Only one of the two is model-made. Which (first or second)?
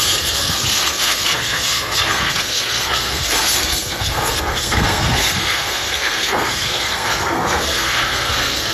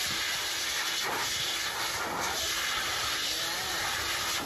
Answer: first